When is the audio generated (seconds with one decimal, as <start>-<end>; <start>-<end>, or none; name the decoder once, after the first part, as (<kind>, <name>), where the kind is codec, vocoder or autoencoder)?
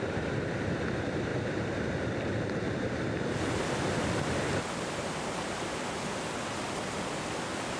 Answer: none